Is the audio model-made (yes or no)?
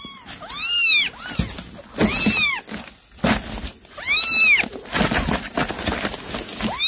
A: no